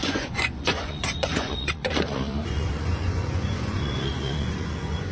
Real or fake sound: fake